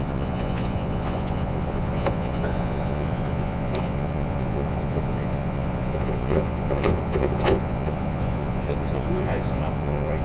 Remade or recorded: remade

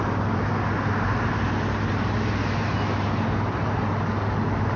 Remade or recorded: recorded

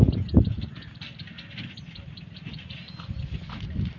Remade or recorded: recorded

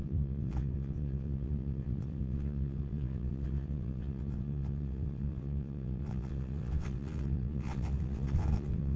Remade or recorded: remade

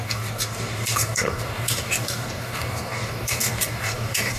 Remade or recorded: remade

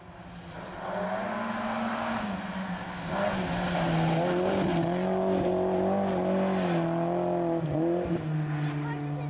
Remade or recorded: recorded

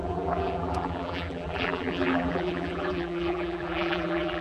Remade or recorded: remade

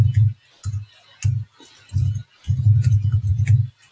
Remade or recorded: recorded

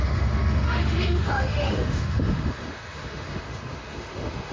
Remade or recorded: remade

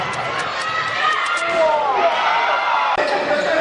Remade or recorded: recorded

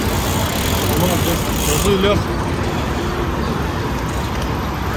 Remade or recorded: recorded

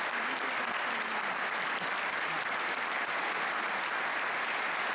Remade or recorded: recorded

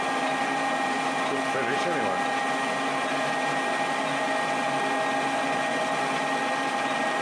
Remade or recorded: recorded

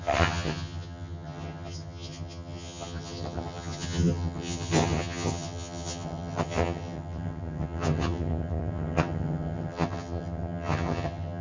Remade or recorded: remade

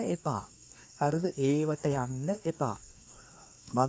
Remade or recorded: remade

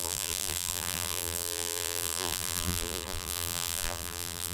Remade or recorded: remade